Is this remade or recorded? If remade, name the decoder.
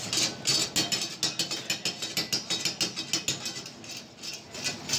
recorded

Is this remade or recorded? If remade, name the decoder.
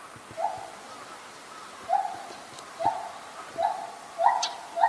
recorded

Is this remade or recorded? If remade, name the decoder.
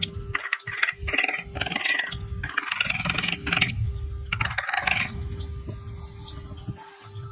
recorded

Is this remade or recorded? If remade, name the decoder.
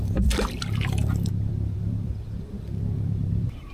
remade, vocoder, BigVGAN v2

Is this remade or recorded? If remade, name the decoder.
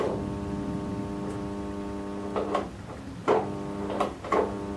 recorded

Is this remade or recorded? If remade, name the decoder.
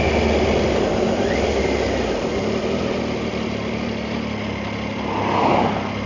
recorded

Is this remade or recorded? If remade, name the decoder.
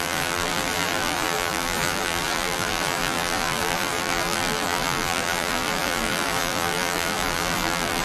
remade, vocoder, BigVGAN v2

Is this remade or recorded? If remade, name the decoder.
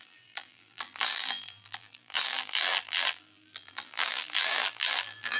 remade, vocoder, BigVGAN v2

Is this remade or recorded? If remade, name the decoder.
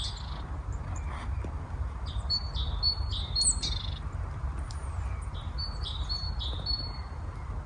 remade, vocoder, BigVGAN v2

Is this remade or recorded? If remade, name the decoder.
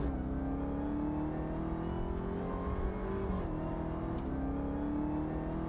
recorded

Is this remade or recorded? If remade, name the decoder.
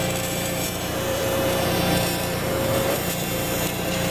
remade, vocoder, BigVGAN v2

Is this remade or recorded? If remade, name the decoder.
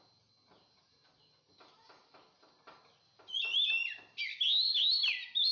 recorded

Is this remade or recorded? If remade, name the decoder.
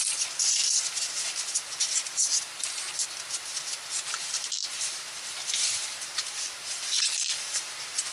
recorded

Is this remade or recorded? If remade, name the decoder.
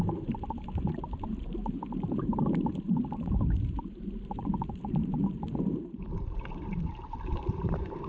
remade, vocoder, BigVGAN v2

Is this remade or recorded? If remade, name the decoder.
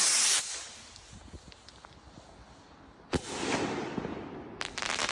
recorded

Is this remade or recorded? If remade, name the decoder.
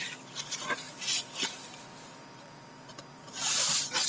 recorded